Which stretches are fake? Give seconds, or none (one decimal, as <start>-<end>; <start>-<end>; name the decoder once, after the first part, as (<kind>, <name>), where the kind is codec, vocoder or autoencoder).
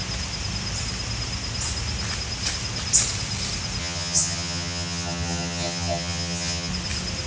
3.8-6.7 (vocoder, HiFi-GAN)